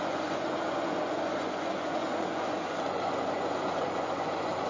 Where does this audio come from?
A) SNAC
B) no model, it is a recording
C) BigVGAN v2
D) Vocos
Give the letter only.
D